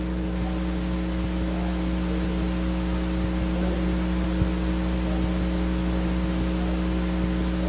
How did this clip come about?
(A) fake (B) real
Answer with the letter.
B